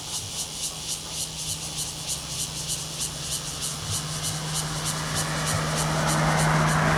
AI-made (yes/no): no